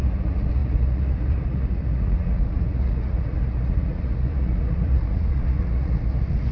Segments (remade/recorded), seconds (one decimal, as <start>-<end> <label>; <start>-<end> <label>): 0.0-6.5 remade